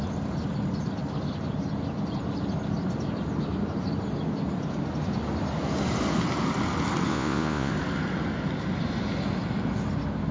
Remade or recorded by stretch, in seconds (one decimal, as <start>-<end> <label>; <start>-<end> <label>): 0.0-7.1 recorded; 7.1-7.7 remade; 7.7-10.3 recorded